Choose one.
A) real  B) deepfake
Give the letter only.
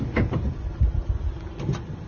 A